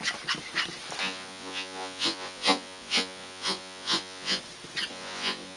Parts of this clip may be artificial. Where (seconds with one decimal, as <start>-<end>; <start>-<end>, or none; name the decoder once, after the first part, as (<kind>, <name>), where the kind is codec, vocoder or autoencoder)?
1.0-4.4 (vocoder, Vocos); 4.9-5.6